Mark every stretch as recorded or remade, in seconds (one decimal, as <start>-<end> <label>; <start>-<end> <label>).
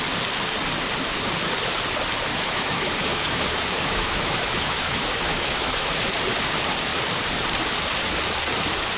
0.0-2.3 recorded; 2.3-6.1 remade; 6.1-9.0 recorded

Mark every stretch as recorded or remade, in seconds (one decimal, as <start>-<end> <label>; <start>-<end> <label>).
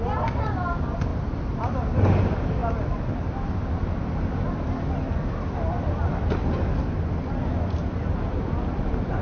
0.0-9.2 recorded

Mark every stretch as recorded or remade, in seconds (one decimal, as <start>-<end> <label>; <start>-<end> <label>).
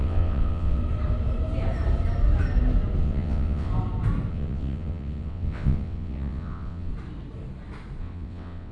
0.0-0.8 remade; 0.8-3.0 recorded; 3.0-3.7 remade; 3.7-4.3 recorded; 4.3-6.9 remade; 6.9-8.0 recorded; 8.0-8.7 remade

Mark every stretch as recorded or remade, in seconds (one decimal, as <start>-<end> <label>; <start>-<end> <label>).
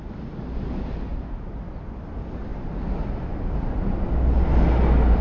0.0-5.2 recorded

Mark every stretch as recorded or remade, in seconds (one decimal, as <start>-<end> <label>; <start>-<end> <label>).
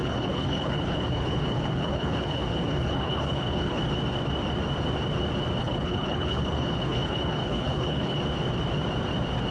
0.0-3.8 remade; 3.8-5.6 recorded; 5.6-8.2 remade; 8.2-9.5 recorded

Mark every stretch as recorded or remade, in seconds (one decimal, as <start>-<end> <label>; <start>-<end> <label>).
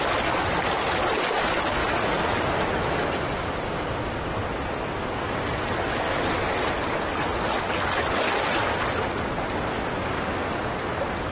0.0-1.8 recorded; 1.8-6.1 remade; 6.1-11.3 recorded